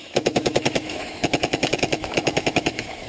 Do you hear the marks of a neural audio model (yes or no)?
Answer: yes